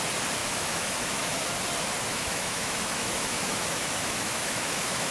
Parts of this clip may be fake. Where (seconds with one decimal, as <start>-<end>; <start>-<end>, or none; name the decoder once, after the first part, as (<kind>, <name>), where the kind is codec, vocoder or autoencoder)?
0.4-1.3 (autoencoder, DAC-VAE); 2.1-5.1